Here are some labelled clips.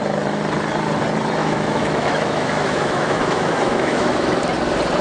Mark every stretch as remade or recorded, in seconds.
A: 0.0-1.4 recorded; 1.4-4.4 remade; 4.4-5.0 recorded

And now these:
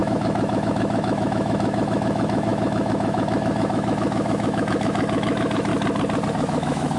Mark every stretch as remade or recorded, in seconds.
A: 0.0-5.7 remade; 5.7-6.3 recorded; 6.3-7.0 remade

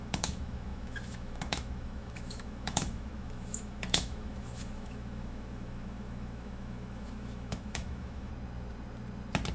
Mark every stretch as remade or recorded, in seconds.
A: 0.0-8.3 remade; 8.3-9.5 recorded

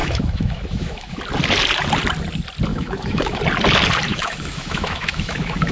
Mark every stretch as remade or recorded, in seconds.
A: 0.0-1.2 remade; 1.2-2.7 recorded; 2.7-3.4 remade; 3.4-4.1 recorded; 4.1-5.7 remade

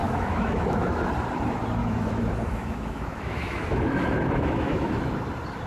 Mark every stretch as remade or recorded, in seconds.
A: 0.0-1.1 remade; 1.1-1.8 recorded; 1.8-5.2 remade; 5.2-5.7 recorded